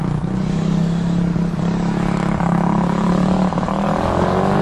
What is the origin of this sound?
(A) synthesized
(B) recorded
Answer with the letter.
A